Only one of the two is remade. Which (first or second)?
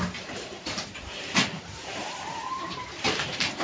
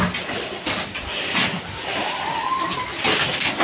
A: first